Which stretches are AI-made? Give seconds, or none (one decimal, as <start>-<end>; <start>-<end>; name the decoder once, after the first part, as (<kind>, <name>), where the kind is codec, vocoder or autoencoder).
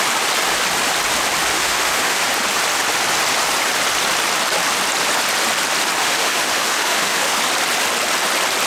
1.5-2.2 (autoencoder, DAC-VAE); 6.0-7.4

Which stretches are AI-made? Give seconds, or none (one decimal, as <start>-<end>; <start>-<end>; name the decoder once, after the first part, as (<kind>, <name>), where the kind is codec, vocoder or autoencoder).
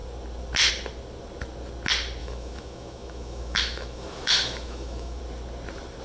2.2-5.2 (autoencoder, DAC-VAE)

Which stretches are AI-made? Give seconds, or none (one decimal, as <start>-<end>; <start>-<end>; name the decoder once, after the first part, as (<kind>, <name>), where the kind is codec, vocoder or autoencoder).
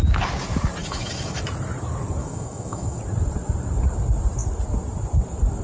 0.8-1.4 (autoencoder, DAC-VAE); 2.2-3.0